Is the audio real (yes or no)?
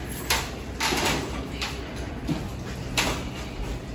yes